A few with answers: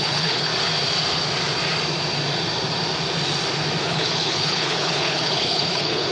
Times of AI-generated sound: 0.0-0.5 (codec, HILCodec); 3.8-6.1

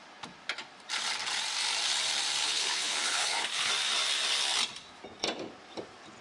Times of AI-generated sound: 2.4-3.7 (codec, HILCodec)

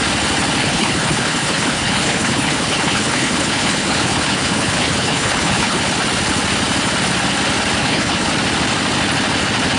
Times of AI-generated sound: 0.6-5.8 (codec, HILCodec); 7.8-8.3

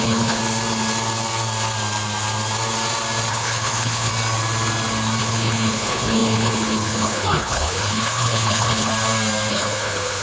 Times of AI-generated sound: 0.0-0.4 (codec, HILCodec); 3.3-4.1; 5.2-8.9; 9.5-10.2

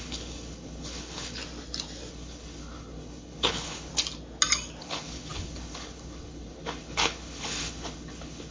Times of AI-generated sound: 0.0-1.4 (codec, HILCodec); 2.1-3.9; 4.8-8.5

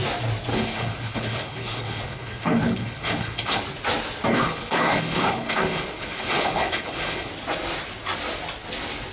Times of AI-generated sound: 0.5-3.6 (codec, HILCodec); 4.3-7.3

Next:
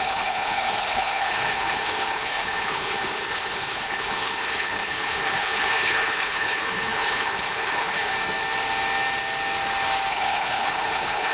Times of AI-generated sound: 0.0-8.1 (codec, HILCodec); 10.1-11.3

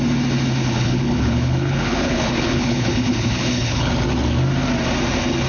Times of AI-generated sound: 0.6-3.9 (codec, HILCodec)